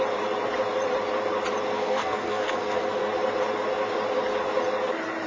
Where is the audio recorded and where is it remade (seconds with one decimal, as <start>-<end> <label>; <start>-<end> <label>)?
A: 0.0-1.7 recorded; 1.7-3.1 remade; 3.1-5.3 recorded